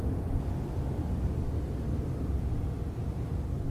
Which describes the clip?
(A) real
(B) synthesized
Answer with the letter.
A